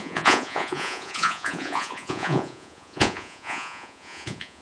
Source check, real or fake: fake